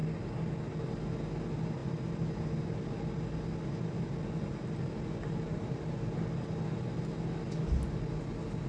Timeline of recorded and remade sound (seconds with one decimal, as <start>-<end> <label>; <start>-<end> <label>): 0.0-8.7 recorded